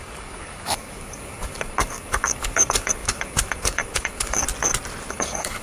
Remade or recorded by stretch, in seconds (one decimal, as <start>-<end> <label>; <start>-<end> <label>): 0.0-4.4 remade; 4.4-5.1 recorded; 5.1-5.6 remade